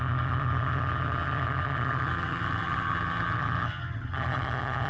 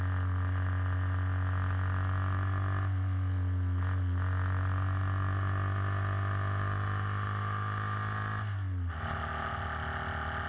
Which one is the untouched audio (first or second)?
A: second